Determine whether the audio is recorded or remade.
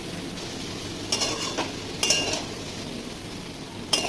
recorded